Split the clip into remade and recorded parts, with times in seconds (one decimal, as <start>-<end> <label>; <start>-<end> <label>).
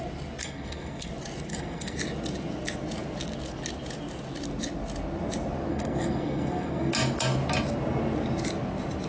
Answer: 0.0-0.4 recorded; 0.4-1.1 remade; 1.1-1.5 recorded; 1.5-2.0 remade; 2.0-5.7 recorded; 5.7-6.9 remade; 6.9-9.1 recorded